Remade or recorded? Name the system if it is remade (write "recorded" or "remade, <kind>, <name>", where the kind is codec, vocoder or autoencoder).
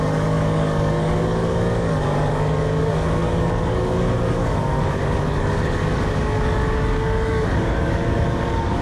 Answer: remade, codec, DAC